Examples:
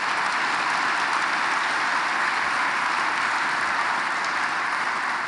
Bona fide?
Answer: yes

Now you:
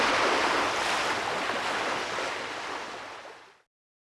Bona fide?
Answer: yes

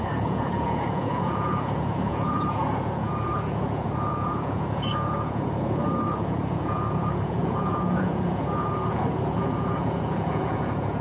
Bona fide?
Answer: no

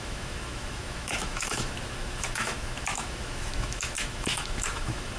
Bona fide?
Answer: no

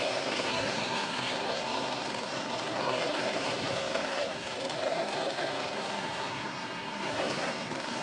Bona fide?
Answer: no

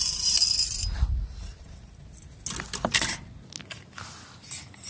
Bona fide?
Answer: yes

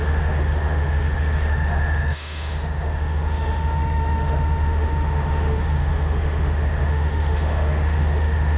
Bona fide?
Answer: no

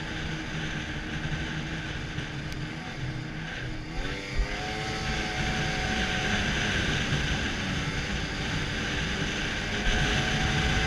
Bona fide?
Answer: yes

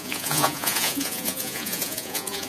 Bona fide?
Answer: no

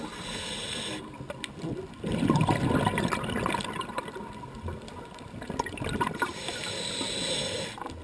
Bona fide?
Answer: yes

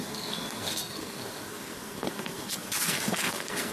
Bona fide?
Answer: no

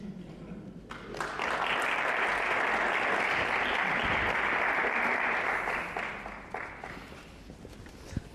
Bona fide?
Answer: yes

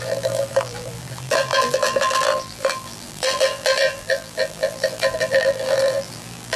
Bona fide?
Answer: no